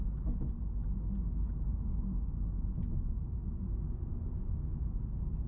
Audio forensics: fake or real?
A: real